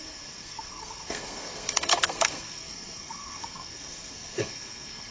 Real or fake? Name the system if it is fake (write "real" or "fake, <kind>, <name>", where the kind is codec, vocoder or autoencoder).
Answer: fake, codec, SNAC